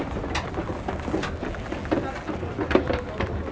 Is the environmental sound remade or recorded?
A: recorded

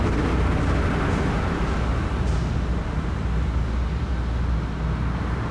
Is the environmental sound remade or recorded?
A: recorded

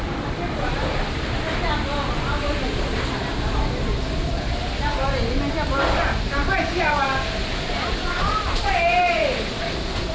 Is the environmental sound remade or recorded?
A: recorded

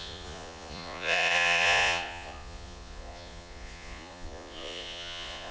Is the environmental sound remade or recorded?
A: remade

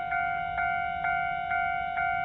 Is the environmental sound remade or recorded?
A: recorded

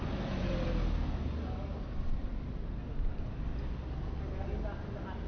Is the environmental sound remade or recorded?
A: recorded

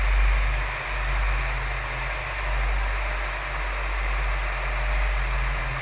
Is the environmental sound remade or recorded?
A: recorded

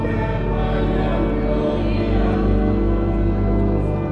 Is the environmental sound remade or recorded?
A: recorded